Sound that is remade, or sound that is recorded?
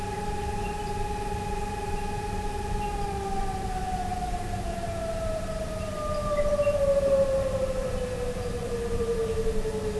remade